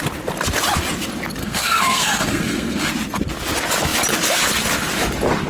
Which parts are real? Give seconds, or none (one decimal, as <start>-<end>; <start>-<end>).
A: 0.0-1.4; 2.9-5.5